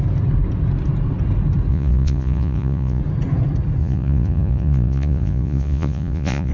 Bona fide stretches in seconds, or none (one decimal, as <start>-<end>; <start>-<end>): 0.0-1.7; 3.0-3.8